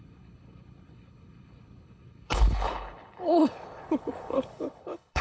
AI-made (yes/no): yes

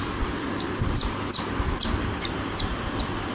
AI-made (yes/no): no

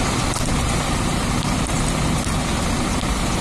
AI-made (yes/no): no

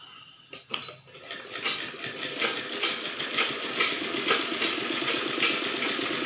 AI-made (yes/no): no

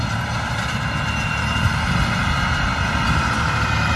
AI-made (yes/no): no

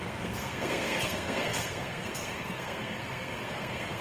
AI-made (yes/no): yes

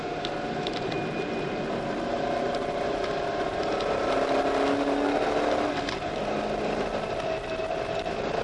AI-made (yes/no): no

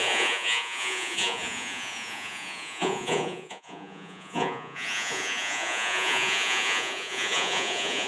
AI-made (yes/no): yes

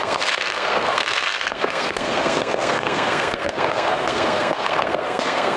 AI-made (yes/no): yes